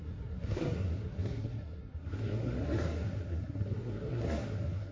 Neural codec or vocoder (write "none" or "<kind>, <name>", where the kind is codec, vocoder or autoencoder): codec, SNAC